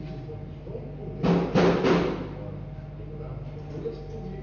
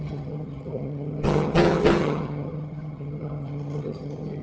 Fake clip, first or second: second